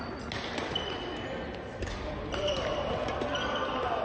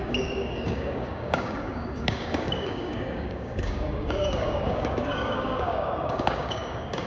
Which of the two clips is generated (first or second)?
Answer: second